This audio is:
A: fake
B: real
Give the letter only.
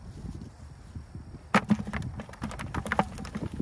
B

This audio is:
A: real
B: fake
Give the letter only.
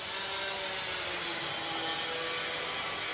A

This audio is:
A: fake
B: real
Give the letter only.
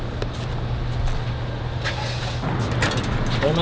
B